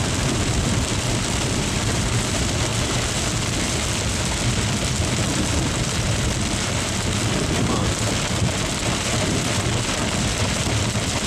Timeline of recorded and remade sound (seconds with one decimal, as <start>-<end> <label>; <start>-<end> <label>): 0.0-2.7 remade; 2.7-4.1 recorded; 4.1-11.3 remade